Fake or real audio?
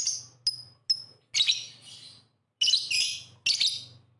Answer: real